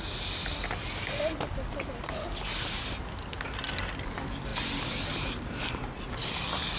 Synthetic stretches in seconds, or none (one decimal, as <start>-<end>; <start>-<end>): none